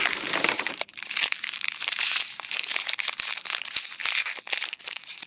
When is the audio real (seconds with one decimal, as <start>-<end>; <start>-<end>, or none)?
4.0-4.8